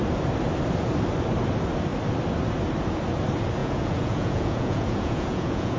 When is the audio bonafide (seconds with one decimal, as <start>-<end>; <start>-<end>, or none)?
0.0-3.6